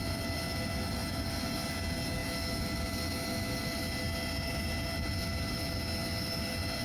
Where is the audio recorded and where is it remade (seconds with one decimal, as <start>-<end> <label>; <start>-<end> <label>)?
0.0-6.8 recorded